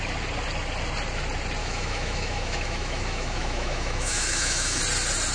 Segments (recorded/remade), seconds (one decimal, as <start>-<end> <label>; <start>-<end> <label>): 0.0-1.6 recorded; 1.6-4.8 remade; 4.8-5.3 recorded